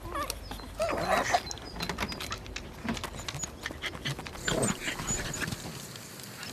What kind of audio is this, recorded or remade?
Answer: recorded